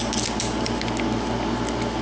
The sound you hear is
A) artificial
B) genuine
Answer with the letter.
B